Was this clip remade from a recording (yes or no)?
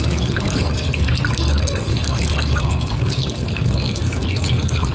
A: yes